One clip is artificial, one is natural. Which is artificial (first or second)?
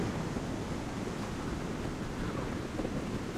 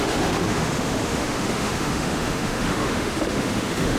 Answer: second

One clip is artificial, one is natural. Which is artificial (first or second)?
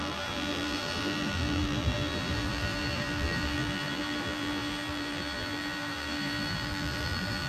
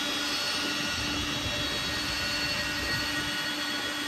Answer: first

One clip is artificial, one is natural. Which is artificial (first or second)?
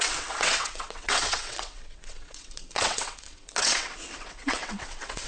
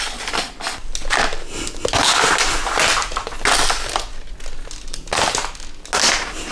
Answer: first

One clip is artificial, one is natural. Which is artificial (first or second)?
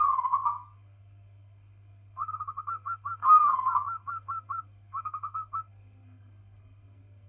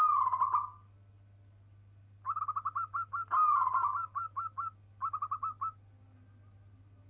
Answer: first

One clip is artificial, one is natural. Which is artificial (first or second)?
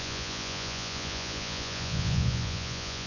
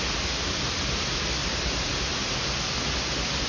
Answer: first